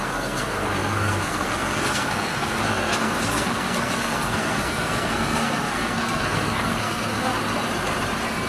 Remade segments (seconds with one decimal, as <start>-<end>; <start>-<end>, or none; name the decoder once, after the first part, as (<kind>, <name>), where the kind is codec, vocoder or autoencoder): 0.0-7.3 (codec, SNAC)